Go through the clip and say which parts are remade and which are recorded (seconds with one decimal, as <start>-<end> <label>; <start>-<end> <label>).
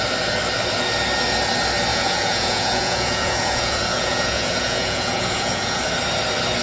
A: 0.0-1.9 recorded; 1.9-5.8 remade; 5.8-6.6 recorded